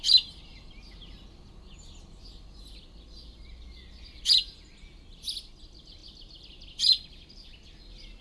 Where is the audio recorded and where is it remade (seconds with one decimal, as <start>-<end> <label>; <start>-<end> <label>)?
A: 0.0-8.2 recorded